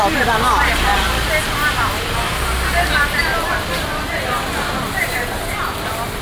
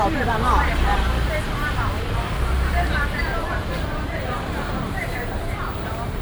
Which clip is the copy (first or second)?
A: second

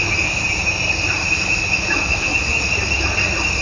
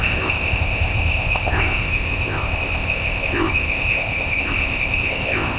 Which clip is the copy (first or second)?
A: second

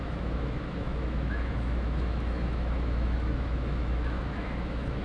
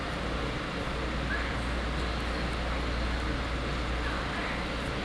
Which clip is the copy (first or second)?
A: first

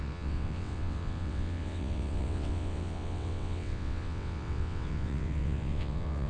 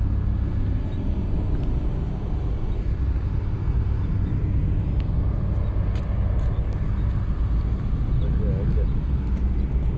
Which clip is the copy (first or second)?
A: first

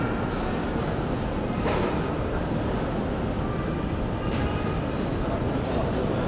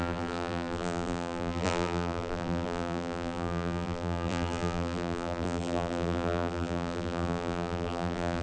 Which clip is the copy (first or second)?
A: second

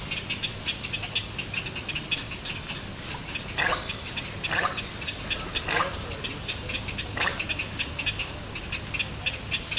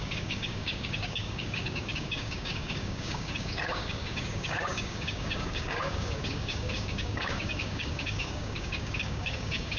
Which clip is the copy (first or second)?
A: second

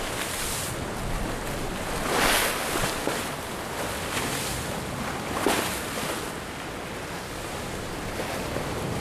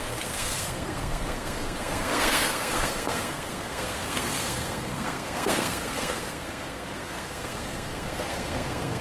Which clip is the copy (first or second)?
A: second